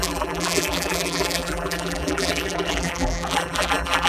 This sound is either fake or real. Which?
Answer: fake